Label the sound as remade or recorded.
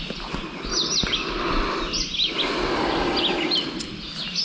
recorded